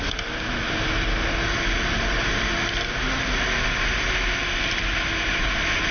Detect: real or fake real